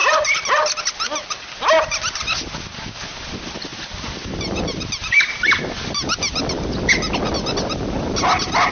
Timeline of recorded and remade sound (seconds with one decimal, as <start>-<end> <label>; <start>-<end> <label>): 0.0-8.7 recorded